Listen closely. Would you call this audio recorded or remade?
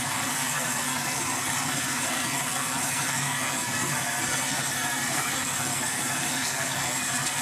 remade